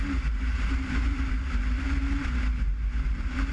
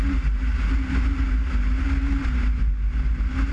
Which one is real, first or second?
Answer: second